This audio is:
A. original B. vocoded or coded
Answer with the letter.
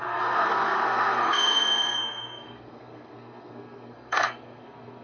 B